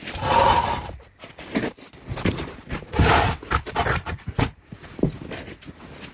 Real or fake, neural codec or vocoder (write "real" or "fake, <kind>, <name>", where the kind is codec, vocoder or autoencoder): fake, vocoder, BigVGAN v2